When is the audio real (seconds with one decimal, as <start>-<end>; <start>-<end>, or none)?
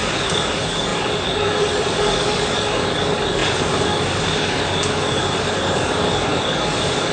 none